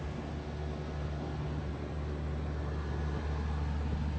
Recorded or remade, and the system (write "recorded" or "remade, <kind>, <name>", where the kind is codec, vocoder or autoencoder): recorded